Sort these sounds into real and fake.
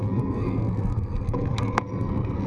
fake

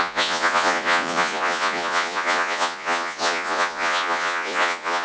fake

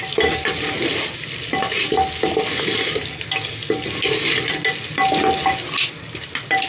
real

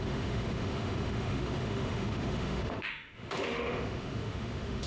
fake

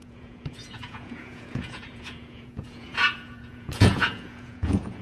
fake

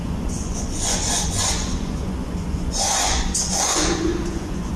fake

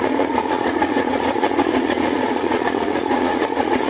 fake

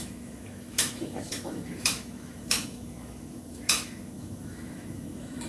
fake